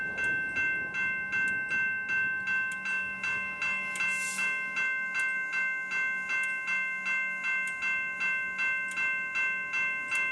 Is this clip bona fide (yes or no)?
yes